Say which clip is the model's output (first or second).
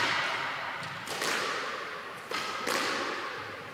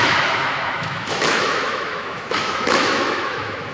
second